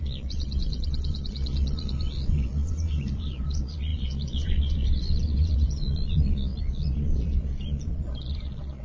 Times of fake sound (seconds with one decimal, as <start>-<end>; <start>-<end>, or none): 0.0-8.8